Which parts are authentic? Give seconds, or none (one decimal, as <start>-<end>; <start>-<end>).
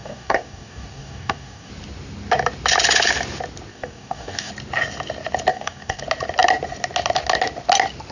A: 1.7-3.7; 4.5-5.5; 6.0-8.1